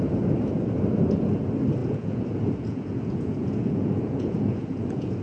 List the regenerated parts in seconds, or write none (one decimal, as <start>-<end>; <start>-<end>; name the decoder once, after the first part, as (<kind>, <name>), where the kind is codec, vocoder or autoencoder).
1.8-5.2 (vocoder, Vocos)